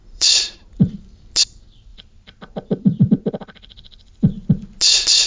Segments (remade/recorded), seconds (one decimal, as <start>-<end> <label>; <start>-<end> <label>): 0.0-1.0 remade; 1.0-1.9 recorded; 1.9-3.1 remade; 3.1-5.3 recorded